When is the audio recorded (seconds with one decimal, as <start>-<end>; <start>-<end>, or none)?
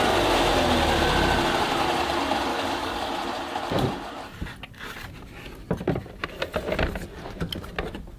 0.0-2.5; 3.1-8.2